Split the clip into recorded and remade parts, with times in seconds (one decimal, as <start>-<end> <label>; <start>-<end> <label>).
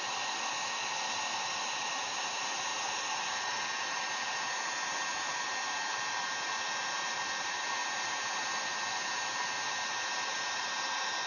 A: 0.0-11.3 recorded